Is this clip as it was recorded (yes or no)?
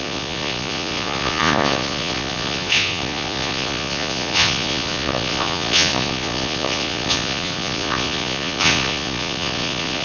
no